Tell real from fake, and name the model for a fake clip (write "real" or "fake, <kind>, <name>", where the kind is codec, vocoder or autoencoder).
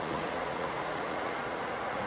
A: fake, vocoder, Vocos